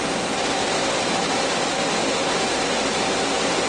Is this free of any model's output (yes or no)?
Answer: yes